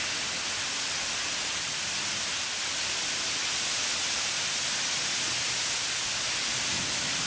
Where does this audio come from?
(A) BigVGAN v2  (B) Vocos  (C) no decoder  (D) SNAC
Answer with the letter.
C